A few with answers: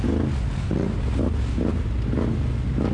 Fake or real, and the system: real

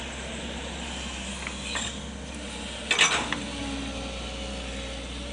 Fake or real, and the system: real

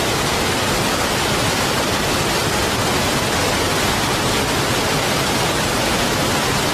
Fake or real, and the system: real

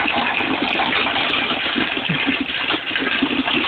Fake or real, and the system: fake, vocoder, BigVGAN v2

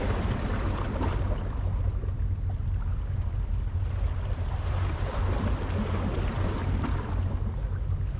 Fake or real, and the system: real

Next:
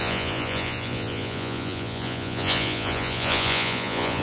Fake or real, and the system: fake, vocoder, Vocos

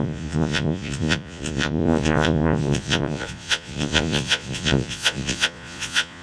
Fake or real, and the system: fake, vocoder, Vocos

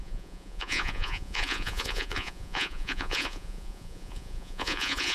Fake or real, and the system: fake, vocoder, Vocos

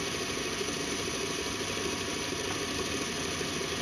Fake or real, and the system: real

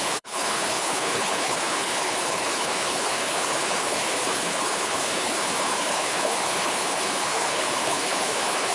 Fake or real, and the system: fake, codec, HILCodec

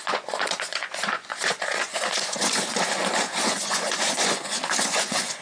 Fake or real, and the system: fake, vocoder, Vocos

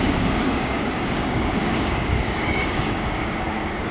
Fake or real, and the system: fake, codec, DAC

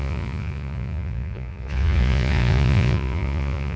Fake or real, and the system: fake, vocoder, Vocos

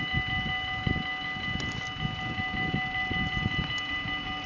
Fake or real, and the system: real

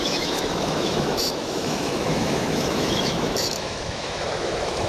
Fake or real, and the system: fake, autoencoder, DAC-VAE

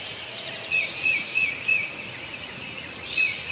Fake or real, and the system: fake, vocoder, Vocos